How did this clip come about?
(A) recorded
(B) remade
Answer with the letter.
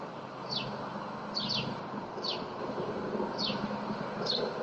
A